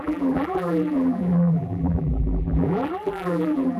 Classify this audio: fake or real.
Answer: fake